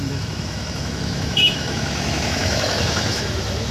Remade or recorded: remade